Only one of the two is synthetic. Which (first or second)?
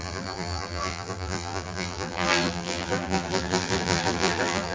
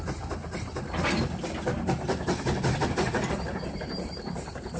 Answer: first